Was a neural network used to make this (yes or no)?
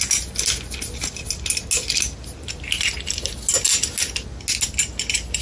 no